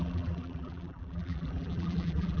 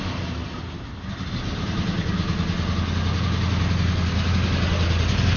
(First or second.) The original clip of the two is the second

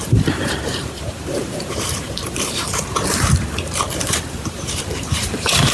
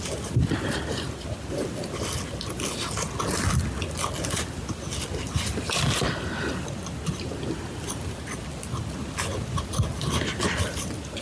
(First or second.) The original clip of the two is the second